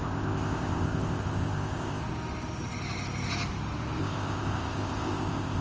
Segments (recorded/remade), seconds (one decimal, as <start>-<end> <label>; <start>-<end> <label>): 0.0-2.0 remade; 2.0-4.0 recorded; 4.0-5.6 remade

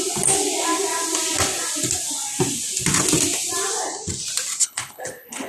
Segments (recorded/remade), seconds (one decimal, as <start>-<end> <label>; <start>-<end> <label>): 0.0-4.6 recorded; 4.6-5.5 remade

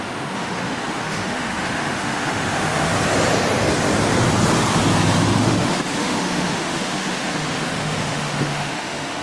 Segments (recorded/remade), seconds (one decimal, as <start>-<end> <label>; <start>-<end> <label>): 0.0-2.9 remade; 2.9-5.4 recorded; 5.4-9.2 remade

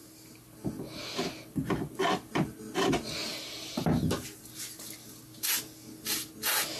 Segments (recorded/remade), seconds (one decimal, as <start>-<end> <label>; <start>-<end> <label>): 0.0-6.8 recorded

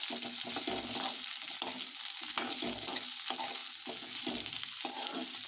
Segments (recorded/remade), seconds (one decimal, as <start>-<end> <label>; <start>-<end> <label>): 0.0-5.5 recorded

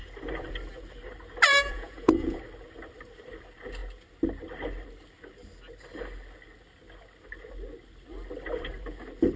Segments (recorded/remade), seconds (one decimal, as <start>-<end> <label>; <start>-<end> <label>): 0.0-1.5 recorded; 1.5-2.4 remade; 2.4-9.4 recorded

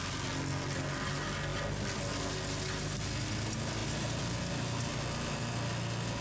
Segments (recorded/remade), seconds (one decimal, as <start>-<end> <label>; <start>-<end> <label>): 0.0-6.2 recorded

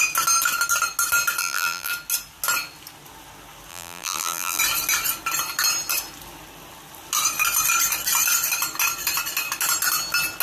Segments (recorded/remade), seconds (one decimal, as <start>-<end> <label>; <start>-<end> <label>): 0.0-1.4 recorded; 1.4-1.9 remade; 1.9-3.7 recorded; 3.7-4.6 remade; 4.6-10.4 recorded